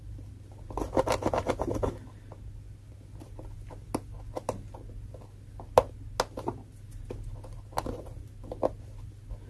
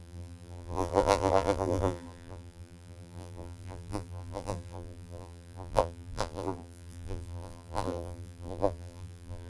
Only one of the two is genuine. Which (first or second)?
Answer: first